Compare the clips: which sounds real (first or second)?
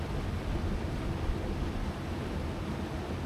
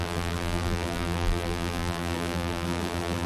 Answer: first